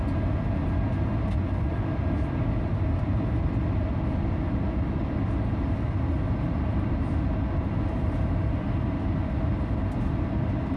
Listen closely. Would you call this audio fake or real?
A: real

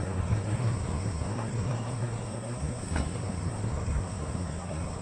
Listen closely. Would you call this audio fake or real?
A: fake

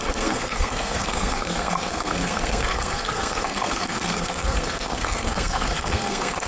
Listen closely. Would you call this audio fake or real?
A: fake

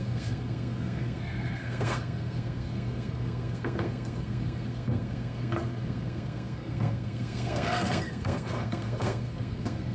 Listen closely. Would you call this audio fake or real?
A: fake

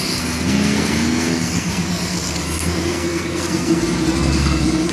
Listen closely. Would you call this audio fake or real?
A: fake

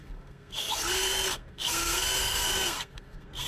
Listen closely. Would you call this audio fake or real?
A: fake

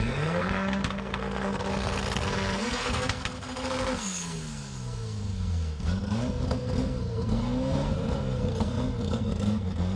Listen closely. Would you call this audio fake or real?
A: fake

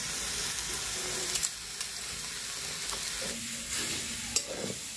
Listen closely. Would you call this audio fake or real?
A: real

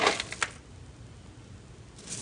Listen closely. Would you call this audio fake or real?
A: real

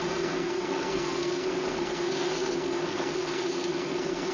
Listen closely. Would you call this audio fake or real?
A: fake